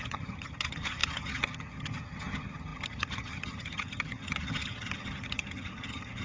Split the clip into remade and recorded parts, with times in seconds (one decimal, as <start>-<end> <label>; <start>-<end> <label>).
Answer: 0.0-6.2 remade